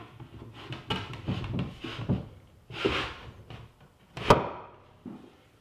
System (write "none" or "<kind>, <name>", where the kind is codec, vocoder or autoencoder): none